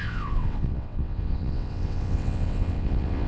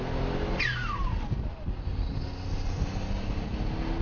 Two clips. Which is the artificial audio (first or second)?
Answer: first